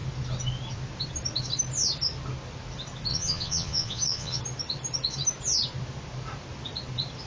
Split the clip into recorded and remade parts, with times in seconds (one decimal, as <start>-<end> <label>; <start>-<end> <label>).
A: 0.0-3.1 recorded; 3.1-4.4 remade; 4.4-7.3 recorded